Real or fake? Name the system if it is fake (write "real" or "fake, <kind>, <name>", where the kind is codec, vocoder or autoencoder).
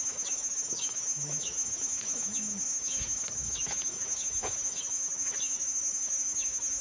fake, autoencoder, DAC-VAE